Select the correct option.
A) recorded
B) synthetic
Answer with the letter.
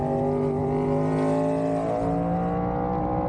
A